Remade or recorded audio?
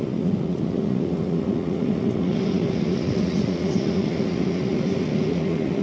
remade